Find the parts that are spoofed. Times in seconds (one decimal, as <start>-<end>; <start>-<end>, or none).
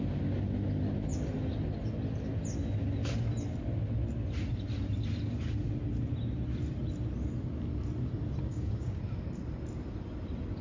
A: 8.5-9.0